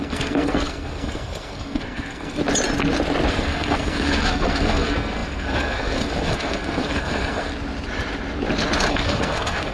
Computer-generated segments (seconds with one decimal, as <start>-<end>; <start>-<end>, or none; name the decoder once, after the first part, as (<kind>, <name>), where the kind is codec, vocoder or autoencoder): 0.0-2.4 (codec, SNAC); 3.3-7.5; 8.9-9.7